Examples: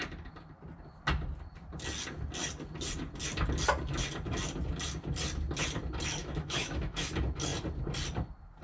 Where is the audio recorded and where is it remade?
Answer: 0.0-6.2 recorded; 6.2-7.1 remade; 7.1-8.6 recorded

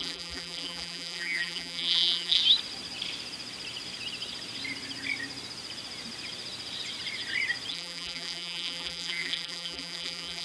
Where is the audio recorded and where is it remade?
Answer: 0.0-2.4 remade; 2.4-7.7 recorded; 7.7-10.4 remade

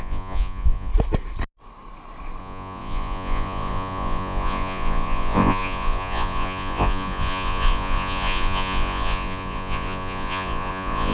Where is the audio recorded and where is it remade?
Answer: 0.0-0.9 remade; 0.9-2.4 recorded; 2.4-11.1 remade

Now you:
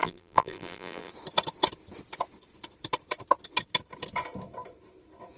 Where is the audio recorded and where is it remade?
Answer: 0.0-1.1 remade; 1.1-5.4 recorded

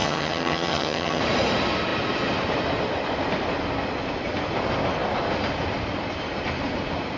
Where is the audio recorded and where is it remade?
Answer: 0.0-1.2 remade; 1.2-7.2 recorded